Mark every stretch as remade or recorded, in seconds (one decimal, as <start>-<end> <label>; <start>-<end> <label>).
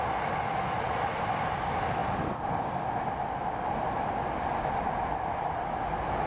0.0-6.3 recorded